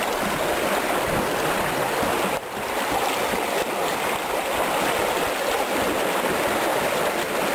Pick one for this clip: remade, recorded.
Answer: recorded